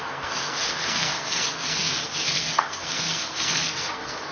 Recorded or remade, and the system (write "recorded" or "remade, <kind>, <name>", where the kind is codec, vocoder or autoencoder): remade, codec, SNAC